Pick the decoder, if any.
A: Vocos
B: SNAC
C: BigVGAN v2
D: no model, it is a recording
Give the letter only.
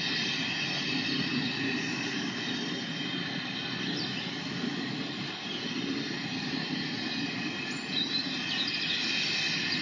D